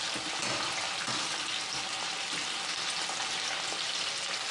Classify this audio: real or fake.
real